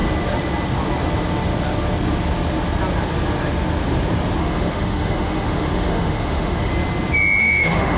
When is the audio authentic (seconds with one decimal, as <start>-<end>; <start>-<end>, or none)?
0.0-4.4; 6.7-7.4